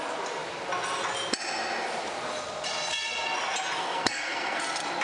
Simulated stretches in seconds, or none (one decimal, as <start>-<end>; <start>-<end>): 3.8-4.6